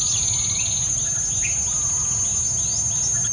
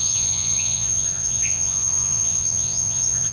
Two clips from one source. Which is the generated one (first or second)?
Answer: second